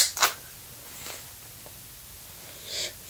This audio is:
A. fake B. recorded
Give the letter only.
B